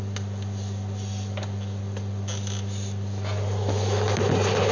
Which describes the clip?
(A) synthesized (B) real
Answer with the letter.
B